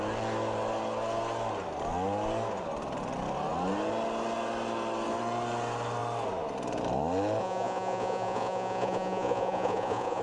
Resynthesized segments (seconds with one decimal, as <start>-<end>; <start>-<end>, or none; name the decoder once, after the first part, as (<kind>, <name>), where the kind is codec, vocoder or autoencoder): 7.4-10.2 (vocoder, Vocos)